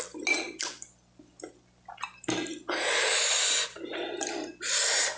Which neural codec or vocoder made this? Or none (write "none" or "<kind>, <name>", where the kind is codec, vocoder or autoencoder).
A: none